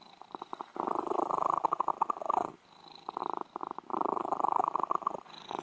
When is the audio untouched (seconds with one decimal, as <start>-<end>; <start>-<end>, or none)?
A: 0.0-3.9